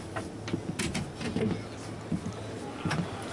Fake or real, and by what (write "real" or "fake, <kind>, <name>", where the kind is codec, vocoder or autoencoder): real